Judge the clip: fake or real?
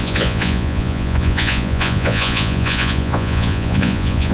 fake